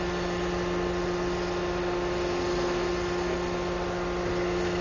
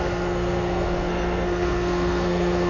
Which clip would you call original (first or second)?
first